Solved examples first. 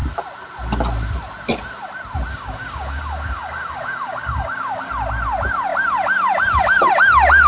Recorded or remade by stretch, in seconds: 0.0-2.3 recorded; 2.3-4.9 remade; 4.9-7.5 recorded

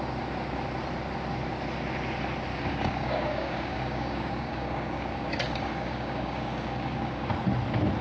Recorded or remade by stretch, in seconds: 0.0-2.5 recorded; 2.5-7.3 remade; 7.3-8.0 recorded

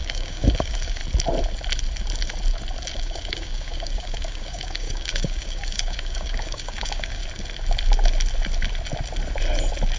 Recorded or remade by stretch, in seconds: 0.0-1.0 remade; 1.0-2.9 recorded; 2.9-7.2 remade; 7.2-10.0 recorded

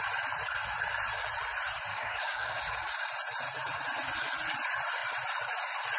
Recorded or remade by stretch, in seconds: 0.0-1.9 recorded; 1.9-2.6 remade; 2.6-6.0 recorded

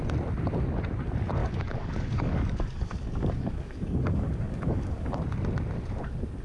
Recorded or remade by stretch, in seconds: 0.0-1.4 recorded; 1.4-5.2 remade; 5.2-6.4 recorded

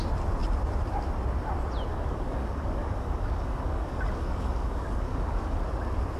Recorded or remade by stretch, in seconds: 0.0-1.9 recorded; 1.9-5.6 remade; 5.6-6.2 recorded